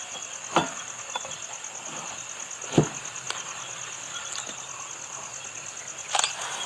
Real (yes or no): yes